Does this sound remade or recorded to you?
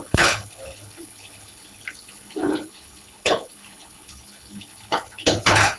remade